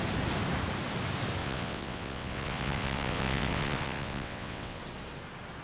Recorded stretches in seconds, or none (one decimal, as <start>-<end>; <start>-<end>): 0.0-1.4; 4.8-5.6